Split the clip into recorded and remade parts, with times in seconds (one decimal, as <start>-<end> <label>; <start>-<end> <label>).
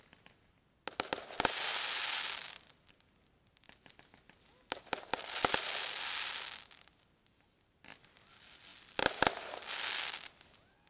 0.0-10.9 recorded